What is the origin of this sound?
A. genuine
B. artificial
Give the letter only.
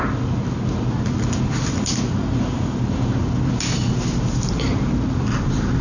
A